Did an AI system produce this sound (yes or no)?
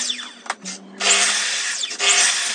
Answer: no